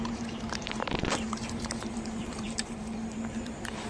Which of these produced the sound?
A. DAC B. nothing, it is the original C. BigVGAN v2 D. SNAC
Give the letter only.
C